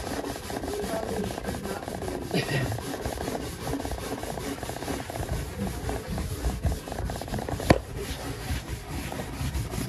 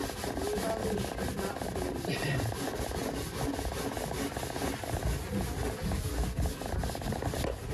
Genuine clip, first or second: second